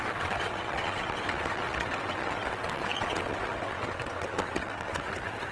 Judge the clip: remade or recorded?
remade